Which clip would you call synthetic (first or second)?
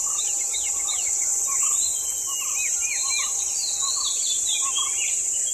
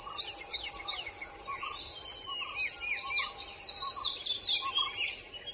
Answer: first